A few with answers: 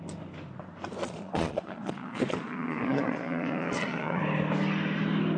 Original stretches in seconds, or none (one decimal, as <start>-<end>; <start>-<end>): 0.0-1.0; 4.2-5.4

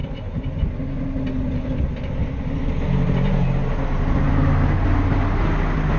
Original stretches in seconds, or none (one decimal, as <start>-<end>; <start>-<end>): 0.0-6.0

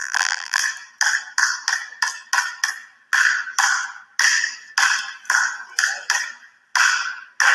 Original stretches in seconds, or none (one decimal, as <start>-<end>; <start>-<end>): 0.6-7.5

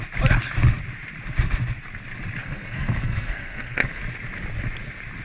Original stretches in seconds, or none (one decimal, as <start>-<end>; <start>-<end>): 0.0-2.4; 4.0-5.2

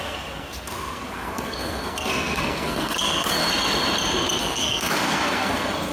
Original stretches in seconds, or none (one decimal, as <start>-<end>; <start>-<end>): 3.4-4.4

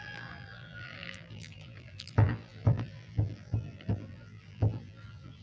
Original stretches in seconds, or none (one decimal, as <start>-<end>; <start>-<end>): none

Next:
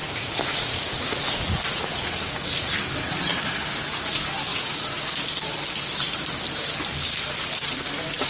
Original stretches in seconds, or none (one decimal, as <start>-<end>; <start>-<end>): 2.8-4.5; 5.1-8.3